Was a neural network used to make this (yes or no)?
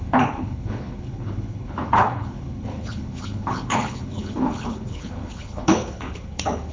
yes